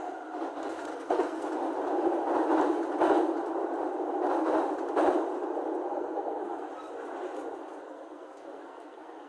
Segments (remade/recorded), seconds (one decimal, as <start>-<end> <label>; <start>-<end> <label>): 0.0-0.9 recorded; 0.9-1.5 remade; 1.5-5.9 recorded; 5.9-6.7 remade; 6.7-7.6 recorded; 7.6-9.3 remade